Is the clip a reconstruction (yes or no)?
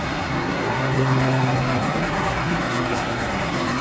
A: yes